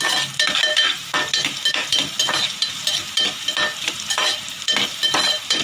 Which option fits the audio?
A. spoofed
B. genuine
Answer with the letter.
B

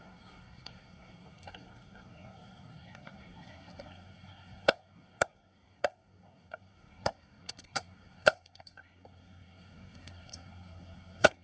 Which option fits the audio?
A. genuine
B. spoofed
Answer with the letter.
B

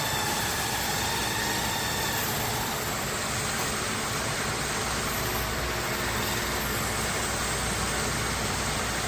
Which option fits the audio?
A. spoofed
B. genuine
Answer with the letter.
B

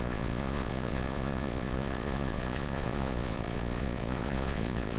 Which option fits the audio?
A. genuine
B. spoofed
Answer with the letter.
B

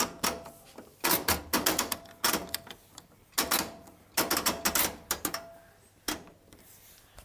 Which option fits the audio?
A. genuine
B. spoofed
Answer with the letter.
A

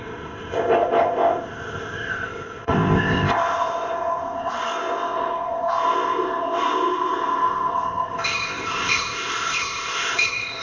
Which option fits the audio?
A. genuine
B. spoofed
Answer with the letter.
B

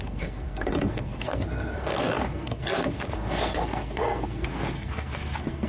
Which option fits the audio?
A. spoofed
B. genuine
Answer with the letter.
A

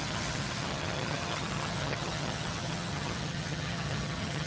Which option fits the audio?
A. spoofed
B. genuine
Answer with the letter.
A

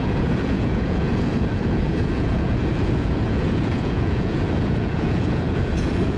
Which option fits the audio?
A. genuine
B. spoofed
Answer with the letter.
B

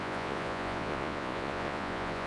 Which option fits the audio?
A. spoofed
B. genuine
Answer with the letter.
A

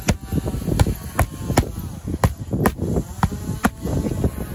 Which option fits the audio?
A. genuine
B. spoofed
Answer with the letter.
A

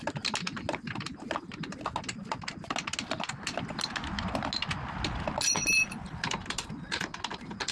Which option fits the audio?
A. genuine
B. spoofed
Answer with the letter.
A